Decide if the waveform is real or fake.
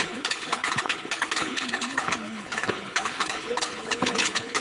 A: fake